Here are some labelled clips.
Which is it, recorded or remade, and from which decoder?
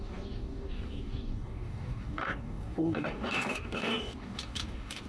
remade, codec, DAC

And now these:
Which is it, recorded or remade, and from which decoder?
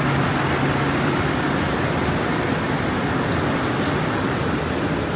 recorded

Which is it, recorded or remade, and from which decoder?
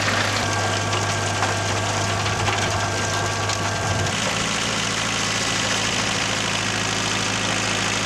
recorded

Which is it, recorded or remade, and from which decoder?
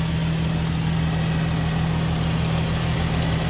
recorded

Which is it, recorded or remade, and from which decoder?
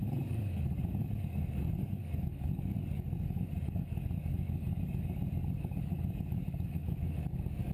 remade, codec, DAC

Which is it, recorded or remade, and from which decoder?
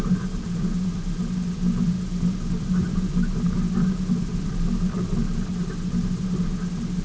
recorded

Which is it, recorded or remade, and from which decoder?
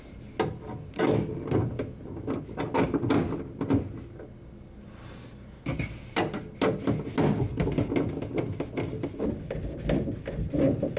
recorded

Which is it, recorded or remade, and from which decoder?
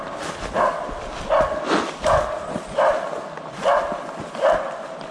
recorded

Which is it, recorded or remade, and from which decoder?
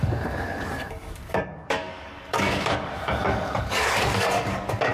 remade, codec, DAC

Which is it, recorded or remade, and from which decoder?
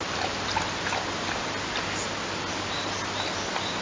recorded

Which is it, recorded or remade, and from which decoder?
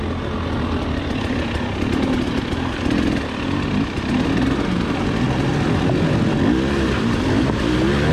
recorded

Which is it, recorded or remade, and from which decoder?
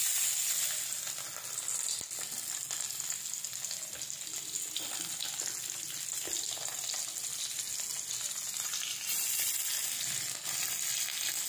recorded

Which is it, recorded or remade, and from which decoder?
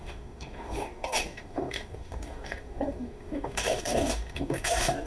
remade, codec, DAC